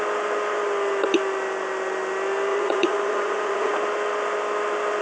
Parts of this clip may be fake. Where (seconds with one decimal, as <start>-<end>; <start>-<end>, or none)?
2.5-3.7